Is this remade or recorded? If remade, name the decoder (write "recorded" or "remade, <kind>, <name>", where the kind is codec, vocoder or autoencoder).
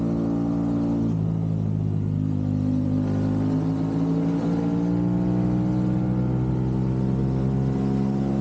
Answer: recorded